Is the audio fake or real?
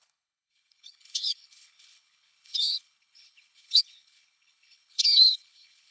fake